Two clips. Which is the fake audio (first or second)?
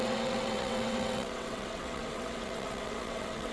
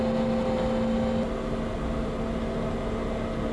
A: first